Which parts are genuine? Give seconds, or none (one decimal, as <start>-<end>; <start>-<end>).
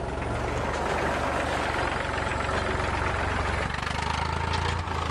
0.0-5.1